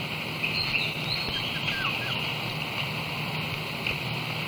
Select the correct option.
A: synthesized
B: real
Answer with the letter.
B